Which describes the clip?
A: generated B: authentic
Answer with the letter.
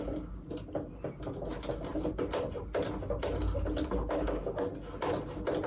B